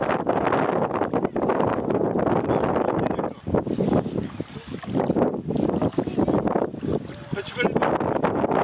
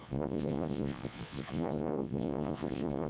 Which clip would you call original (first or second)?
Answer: first